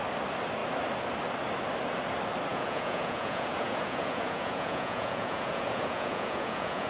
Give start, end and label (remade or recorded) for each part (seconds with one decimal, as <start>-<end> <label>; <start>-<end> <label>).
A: 0.0-2.5 recorded; 2.5-6.9 remade